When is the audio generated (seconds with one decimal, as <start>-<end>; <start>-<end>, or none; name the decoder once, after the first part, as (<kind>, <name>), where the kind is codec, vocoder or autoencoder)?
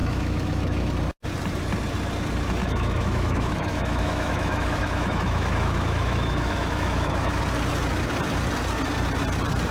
0.0-0.9 (autoencoder, DAC-VAE); 2.6-7.4